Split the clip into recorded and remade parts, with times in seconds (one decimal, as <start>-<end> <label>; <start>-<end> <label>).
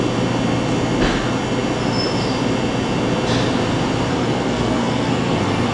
0.0-4.1 recorded; 4.1-5.7 remade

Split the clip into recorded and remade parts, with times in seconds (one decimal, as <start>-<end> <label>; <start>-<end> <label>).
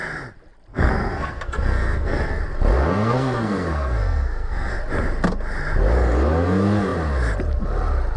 0.0-0.7 recorded; 0.7-2.4 remade; 2.4-2.8 recorded; 2.8-4.7 remade; 4.7-8.2 recorded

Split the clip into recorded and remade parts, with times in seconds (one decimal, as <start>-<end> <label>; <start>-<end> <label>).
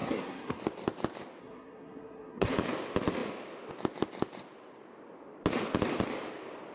0.0-0.6 remade; 0.6-1.4 recorded; 1.4-2.5 remade; 2.5-6.7 recorded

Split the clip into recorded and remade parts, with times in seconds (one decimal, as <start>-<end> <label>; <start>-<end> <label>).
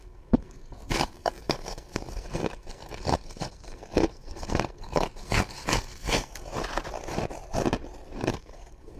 0.0-6.5 remade; 6.5-8.3 recorded; 8.3-9.0 remade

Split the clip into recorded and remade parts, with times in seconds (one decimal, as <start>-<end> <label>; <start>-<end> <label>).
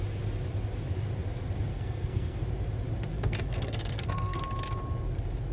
0.0-1.7 recorded; 1.7-2.4 remade; 2.4-3.1 recorded; 3.1-4.4 remade; 4.4-5.5 recorded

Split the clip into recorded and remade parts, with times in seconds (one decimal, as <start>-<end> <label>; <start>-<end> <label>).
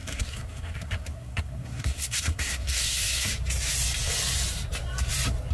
0.0-3.3 remade; 3.3-5.5 recorded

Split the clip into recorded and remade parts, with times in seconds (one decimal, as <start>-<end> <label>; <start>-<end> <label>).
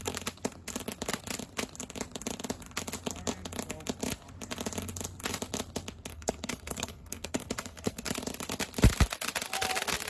0.0-6.1 recorded; 6.1-8.1 remade; 8.1-10.1 recorded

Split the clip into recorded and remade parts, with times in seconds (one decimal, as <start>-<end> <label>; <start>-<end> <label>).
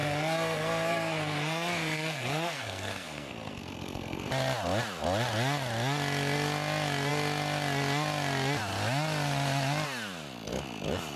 0.0-4.3 remade; 4.3-11.2 recorded